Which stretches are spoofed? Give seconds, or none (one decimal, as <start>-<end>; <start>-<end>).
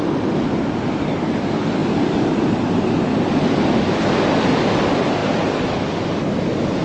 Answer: none